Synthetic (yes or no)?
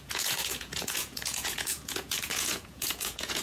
yes